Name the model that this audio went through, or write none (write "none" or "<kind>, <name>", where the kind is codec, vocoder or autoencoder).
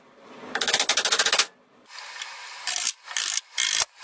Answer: none